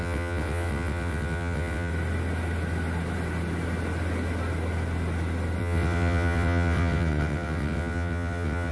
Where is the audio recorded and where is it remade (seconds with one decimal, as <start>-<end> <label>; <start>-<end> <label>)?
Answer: 0.0-1.9 remade; 1.9-5.6 recorded; 5.6-8.7 remade